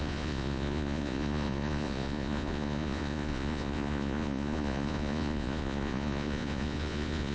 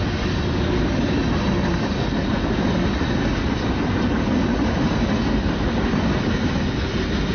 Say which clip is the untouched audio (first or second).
second